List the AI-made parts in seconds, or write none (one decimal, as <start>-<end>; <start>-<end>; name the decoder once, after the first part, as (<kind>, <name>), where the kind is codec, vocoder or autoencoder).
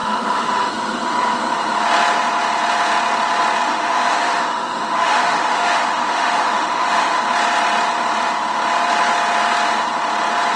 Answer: 0.0-0.7 (autoencoder, DAC-VAE); 3.7-7.2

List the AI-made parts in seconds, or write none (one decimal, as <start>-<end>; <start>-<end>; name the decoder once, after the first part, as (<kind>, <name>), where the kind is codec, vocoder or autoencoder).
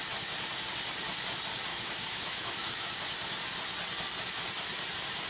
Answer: 1.7-2.9 (autoencoder, DAC-VAE)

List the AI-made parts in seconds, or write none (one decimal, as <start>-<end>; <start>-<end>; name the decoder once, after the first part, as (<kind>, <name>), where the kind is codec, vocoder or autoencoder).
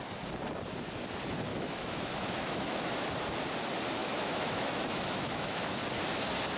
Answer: 1.5-3.1 (autoencoder, DAC-VAE); 4.0-5.8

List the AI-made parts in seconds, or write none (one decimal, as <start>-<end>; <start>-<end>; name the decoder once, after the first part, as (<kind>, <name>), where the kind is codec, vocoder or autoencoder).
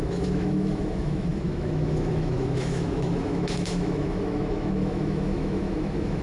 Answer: 0.0-6.2 (autoencoder, DAC-VAE)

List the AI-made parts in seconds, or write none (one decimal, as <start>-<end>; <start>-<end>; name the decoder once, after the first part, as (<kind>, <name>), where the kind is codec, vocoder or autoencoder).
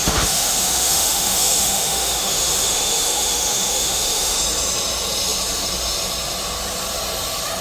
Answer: 0.0-4.4 (autoencoder, DAC-VAE)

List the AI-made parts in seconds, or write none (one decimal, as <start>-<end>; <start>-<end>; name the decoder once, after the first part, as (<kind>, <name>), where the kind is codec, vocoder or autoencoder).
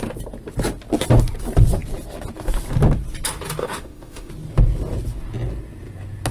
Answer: 3.6-4.3 (autoencoder, DAC-VAE)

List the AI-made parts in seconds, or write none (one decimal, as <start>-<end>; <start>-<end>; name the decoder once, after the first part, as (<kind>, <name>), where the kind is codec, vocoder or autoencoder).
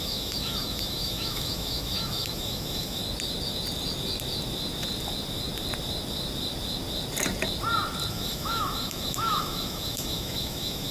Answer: 0.0-3.0 (autoencoder, DAC-VAE); 8.1-10.9